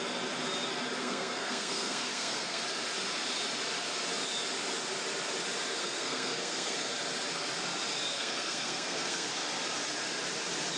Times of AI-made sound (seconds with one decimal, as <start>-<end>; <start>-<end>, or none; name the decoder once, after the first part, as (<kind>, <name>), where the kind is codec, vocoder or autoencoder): 1.0-2.6 (codec, SNAC); 5.8-6.9; 8.1-9.3